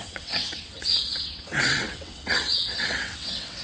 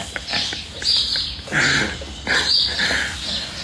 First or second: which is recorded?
second